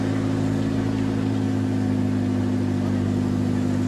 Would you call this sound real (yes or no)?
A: yes